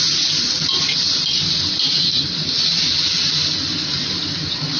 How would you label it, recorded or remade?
recorded